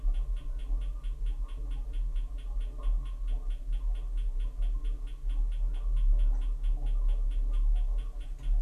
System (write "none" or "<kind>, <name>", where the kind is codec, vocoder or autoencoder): none